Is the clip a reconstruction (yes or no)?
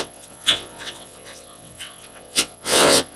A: yes